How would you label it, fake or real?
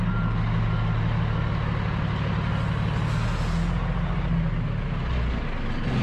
real